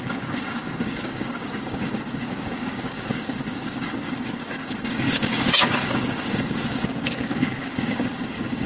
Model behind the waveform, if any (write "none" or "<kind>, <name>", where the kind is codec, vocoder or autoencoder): codec, DAC